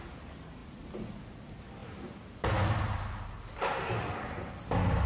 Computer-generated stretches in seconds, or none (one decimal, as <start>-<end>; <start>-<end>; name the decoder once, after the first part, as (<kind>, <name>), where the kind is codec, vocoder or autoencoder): none